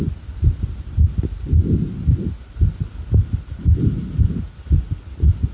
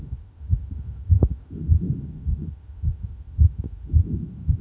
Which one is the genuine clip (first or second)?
first